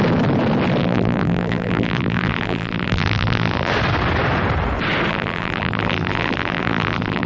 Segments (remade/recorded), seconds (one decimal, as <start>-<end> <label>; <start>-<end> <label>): 0.0-0.8 recorded; 0.8-3.7 remade; 3.7-5.1 recorded; 5.1-7.3 remade

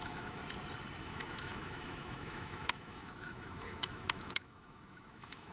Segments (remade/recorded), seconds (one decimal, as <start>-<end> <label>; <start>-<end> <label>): 0.0-0.4 remade; 0.4-1.0 recorded; 1.0-5.5 remade